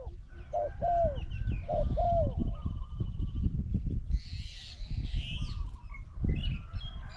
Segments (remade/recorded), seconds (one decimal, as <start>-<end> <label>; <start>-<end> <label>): 0.0-7.2 recorded